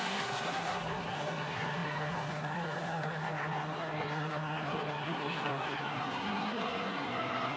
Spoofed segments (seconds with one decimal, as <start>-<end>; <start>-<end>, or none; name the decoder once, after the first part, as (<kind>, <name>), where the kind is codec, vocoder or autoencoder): 0.0-7.6 (codec, SNAC)

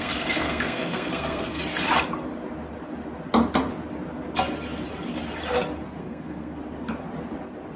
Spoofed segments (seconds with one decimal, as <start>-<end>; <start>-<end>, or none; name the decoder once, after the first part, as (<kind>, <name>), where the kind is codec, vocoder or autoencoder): 0.0-1.6 (codec, SNAC); 6.0-6.6

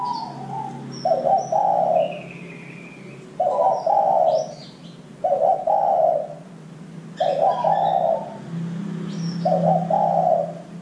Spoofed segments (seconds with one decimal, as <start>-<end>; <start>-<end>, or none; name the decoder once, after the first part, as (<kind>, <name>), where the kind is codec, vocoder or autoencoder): none

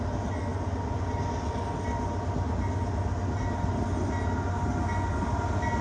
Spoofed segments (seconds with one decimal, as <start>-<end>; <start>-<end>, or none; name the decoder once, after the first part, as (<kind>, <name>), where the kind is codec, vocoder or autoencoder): none

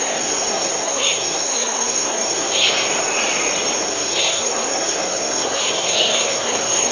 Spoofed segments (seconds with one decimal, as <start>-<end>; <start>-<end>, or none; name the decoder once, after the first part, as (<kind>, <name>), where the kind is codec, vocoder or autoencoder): 0.0-2.9 (codec, SNAC); 3.8-6.9

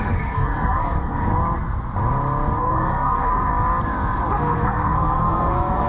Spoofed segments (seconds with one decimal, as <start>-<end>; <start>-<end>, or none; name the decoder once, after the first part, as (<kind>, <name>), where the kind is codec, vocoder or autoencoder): 0.0-1.3 (codec, SNAC); 2.6-3.5; 4.3-5.9